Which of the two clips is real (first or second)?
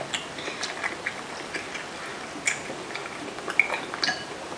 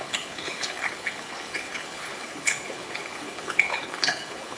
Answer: first